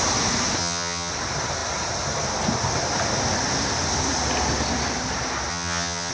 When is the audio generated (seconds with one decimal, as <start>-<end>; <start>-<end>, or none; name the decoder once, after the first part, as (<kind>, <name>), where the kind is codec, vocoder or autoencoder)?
0.6-1.1 (vocoder, HiFi-GAN); 5.5-6.1